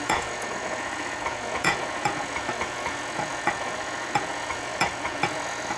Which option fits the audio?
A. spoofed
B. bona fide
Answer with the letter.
A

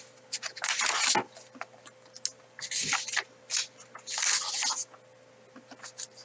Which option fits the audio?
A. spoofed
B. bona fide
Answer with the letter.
B